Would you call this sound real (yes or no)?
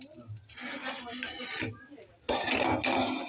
yes